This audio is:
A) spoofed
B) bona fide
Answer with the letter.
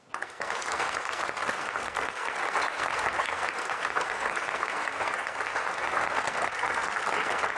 A